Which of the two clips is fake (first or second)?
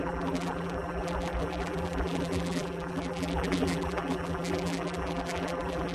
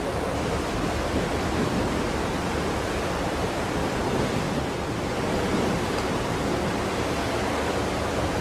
first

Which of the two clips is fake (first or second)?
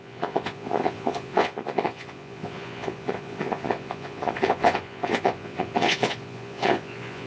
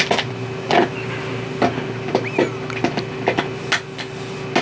first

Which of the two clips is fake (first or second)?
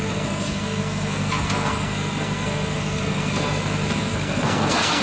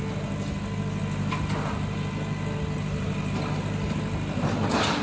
first